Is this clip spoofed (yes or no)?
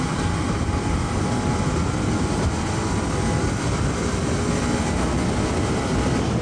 no